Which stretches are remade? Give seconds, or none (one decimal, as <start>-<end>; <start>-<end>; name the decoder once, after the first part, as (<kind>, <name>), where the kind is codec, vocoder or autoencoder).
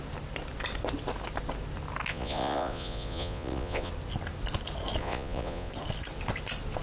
2.1-3.9 (vocoder, Vocos); 5.0-5.7